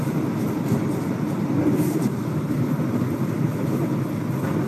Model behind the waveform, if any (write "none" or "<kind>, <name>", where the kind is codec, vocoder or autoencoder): none